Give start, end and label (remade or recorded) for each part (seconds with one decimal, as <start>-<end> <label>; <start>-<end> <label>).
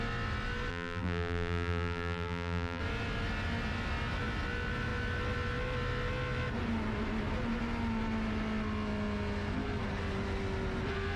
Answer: 0.0-0.7 recorded; 0.7-2.8 remade; 2.8-11.2 recorded